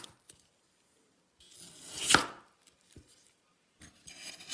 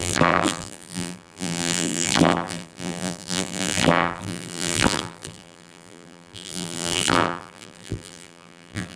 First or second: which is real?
first